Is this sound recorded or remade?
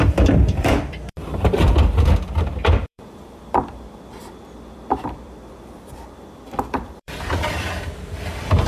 remade